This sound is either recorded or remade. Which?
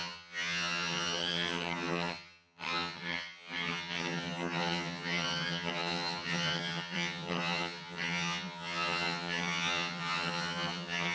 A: remade